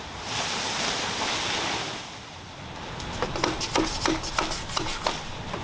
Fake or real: real